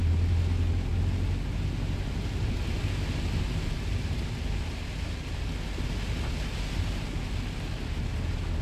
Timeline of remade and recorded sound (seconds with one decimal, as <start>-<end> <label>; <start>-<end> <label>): 0.0-8.6 recorded